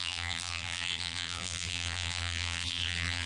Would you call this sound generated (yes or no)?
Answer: yes